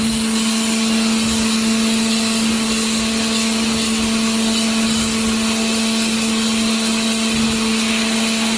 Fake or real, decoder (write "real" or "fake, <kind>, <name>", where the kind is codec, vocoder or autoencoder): real